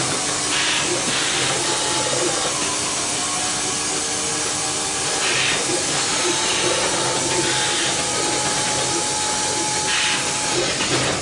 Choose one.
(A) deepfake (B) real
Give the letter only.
B